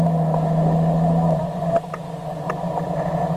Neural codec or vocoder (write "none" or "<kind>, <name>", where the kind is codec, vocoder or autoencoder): none